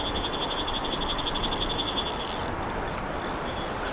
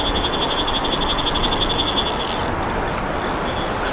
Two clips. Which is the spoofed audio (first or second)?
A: first